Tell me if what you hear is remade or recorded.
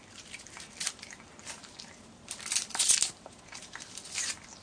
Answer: recorded